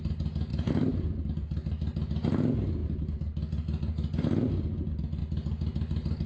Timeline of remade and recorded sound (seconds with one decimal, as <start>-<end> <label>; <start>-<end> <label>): 0.0-0.5 recorded; 0.5-1.1 remade; 1.1-6.3 recorded